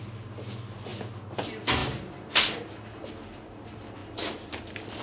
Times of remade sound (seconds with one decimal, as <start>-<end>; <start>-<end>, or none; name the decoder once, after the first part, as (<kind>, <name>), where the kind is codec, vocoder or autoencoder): none